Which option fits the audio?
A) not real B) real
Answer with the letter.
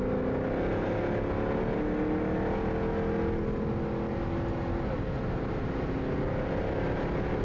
B